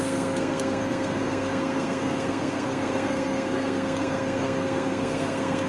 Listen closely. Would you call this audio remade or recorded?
remade